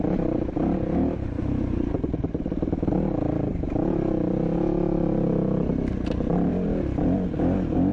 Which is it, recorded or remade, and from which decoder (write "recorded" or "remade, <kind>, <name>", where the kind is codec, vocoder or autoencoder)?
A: recorded